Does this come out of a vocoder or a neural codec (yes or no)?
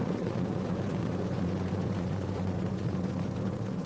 yes